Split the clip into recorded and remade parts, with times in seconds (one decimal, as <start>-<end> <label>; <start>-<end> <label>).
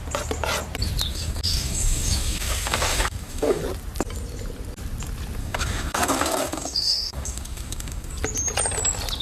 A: 0.0-1.1 recorded; 1.1-3.6 remade; 3.6-5.4 recorded; 5.4-8.1 remade; 8.1-9.2 recorded